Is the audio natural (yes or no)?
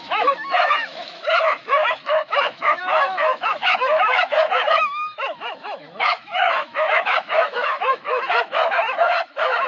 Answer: no